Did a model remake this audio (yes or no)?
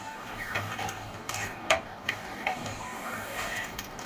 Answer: yes